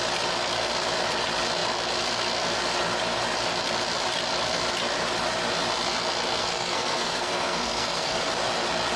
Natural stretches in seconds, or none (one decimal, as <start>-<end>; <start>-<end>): 0.0-6.4; 8.3-9.0